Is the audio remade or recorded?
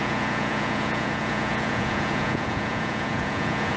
remade